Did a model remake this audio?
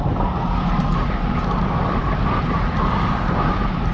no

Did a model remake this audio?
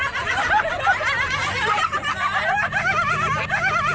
no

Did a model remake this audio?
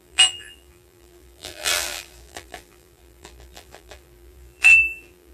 yes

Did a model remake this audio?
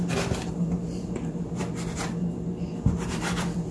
no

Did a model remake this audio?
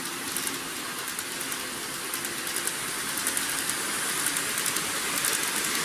no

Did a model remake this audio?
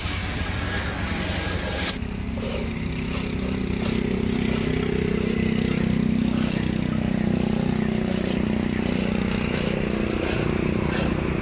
no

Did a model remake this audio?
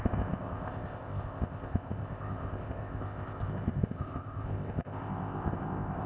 yes